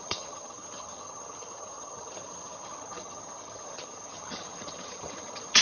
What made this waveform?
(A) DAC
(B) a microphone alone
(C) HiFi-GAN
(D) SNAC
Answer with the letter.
C